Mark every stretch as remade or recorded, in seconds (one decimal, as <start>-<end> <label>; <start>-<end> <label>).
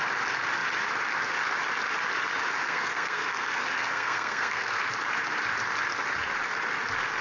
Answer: 0.0-2.6 recorded; 2.6-4.8 remade; 4.8-7.2 recorded